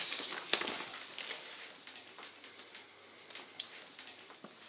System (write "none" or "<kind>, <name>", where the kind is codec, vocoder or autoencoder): none